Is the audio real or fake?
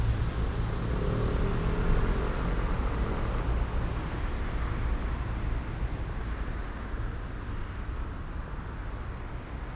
real